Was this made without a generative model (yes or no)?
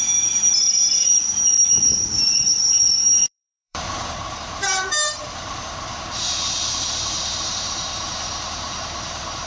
no